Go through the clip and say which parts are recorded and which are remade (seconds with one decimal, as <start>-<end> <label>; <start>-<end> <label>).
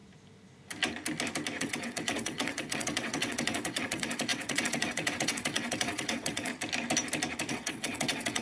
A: 0.0-1.6 recorded; 1.6-6.5 remade; 6.5-7.5 recorded; 7.5-8.4 remade